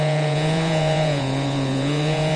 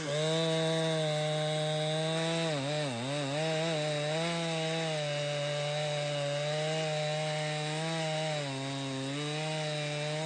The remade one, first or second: first